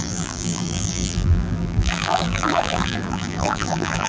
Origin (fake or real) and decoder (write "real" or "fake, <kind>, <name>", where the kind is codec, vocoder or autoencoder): fake, vocoder, BigVGAN v2